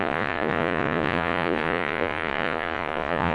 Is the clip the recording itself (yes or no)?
no